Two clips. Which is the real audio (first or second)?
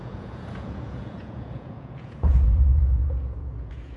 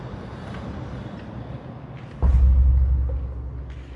second